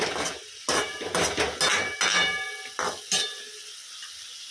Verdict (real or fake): real